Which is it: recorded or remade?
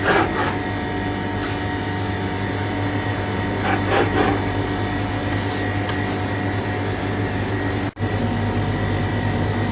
recorded